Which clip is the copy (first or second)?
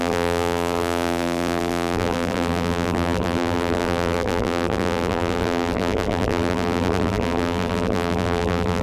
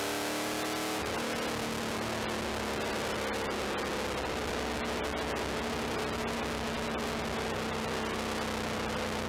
first